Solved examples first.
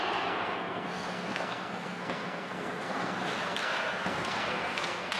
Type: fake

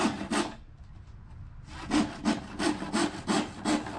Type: real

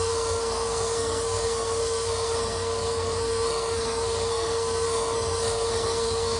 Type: fake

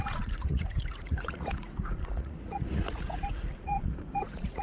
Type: fake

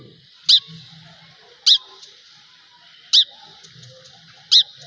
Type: real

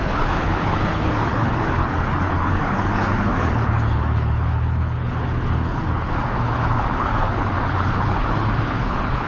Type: fake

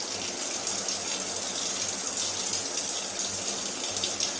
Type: real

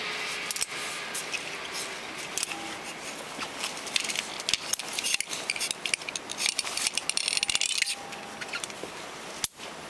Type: real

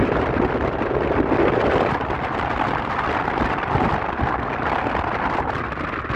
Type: real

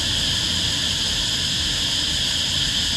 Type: real